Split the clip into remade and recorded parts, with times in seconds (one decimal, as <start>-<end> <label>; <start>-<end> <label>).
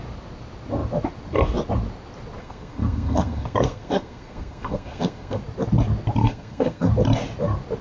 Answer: 0.0-2.4 recorded; 2.4-5.4 remade; 5.4-6.2 recorded; 6.2-6.9 remade; 6.9-7.8 recorded